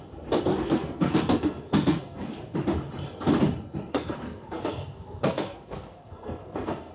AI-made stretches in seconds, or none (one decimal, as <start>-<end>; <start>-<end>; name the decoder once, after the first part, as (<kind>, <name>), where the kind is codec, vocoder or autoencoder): 0.5-2.3 (codec, SNAC); 3.9-6.9